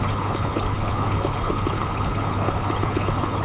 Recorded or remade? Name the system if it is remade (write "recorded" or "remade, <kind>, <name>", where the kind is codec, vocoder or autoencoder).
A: remade, codec, HILCodec